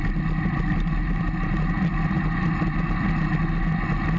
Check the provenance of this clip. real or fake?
real